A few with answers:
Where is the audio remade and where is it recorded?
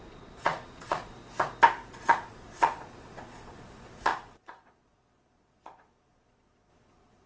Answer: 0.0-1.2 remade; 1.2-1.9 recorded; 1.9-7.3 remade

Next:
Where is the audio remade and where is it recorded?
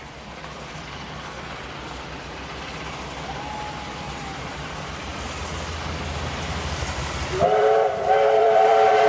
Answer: 0.0-5.1 remade; 5.1-6.1 recorded; 6.1-9.1 remade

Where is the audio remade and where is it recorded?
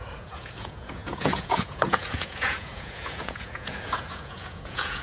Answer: 0.0-5.0 remade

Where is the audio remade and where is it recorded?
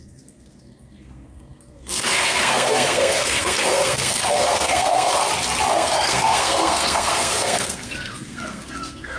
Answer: 0.0-5.1 remade; 5.1-5.7 recorded; 5.7-9.2 remade